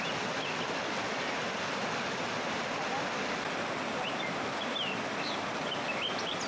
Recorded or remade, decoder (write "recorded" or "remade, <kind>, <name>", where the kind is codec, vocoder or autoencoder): recorded